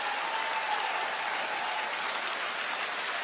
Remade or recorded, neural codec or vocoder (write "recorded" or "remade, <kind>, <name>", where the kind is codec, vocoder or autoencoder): recorded